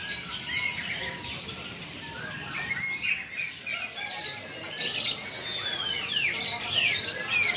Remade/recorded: recorded